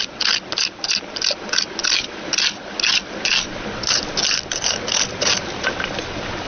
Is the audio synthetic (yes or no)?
no